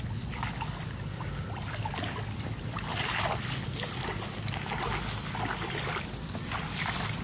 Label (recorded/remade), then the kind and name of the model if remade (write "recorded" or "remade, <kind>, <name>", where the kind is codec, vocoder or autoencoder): recorded